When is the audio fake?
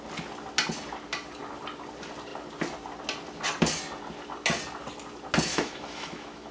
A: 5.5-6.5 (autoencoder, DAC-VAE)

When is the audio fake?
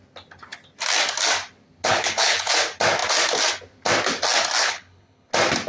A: 1.9-2.5 (codec, HILCodec); 4.6-5.3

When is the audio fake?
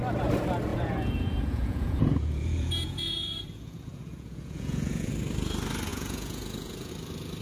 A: 0.7-5.1 (vocoder, Vocos); 5.9-6.9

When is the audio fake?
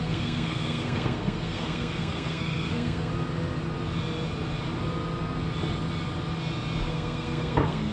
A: 0.0-3.1 (codec, SNAC); 6.9-7.9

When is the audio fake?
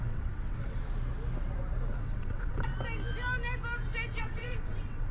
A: 0.0-0.8 (vocoder, WaveNeXt); 1.9-2.7; 4.2-5.1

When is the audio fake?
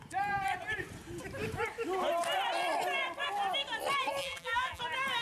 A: 4.2-4.8 (vocoder, BigVGAN v2)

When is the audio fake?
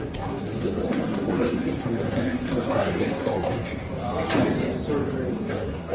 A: 0.0-3.8 (codec, SNAC); 5.3-5.9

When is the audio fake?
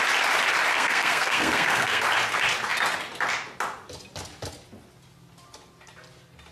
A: 0.7-2.0 (codec, SNAC)